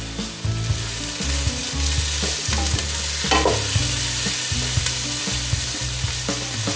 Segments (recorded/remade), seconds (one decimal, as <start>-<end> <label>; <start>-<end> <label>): 0.0-6.8 recorded